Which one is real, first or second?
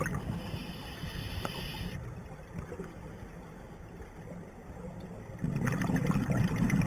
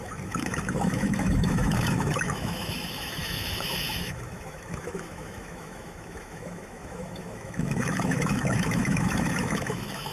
first